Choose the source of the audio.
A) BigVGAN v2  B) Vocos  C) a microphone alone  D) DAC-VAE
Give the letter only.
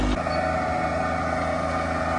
C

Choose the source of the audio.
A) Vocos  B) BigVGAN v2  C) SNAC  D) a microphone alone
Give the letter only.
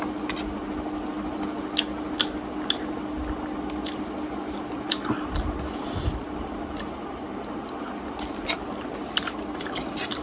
D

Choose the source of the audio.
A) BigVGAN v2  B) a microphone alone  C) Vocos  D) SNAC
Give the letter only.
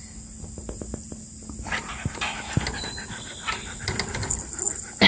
B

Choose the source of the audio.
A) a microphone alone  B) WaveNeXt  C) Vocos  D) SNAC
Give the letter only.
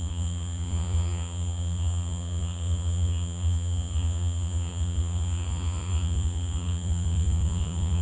C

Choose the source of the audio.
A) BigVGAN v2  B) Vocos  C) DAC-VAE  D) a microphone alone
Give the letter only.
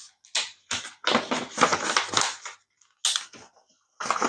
D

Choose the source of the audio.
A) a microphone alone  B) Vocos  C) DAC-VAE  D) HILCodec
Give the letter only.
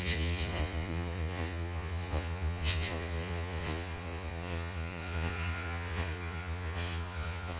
B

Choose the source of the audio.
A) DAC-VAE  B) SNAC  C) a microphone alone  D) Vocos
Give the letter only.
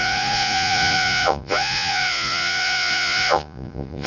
D